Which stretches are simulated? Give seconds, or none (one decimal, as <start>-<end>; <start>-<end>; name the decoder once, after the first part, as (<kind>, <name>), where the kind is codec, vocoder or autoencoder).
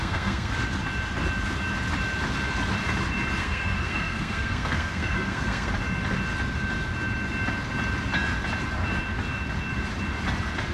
0.0-0.5 (codec, SNAC); 3.4-5.7